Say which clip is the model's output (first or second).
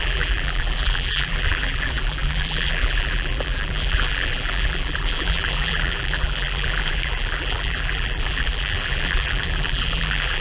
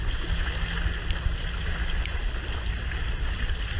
first